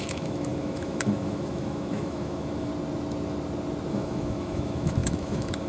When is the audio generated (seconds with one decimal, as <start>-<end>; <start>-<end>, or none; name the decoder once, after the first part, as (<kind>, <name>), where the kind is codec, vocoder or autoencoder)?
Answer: 0.0-2.7 (autoencoder, DAC-VAE); 3.9-5.7